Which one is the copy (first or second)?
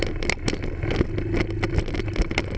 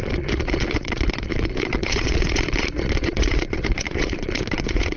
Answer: second